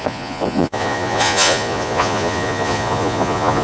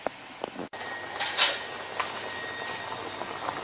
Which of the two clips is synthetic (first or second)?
first